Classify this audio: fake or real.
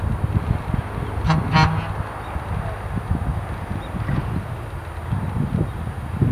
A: real